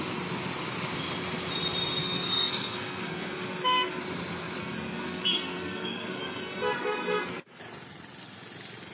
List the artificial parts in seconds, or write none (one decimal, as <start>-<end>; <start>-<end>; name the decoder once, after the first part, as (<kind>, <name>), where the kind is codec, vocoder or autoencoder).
2.0-4.0 (codec, SNAC); 4.6-7.6